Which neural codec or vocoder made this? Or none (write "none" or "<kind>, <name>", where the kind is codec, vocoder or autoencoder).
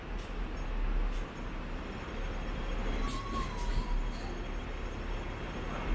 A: none